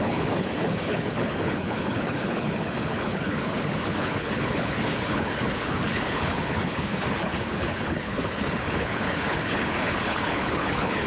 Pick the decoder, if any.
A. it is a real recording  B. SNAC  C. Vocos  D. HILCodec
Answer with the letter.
D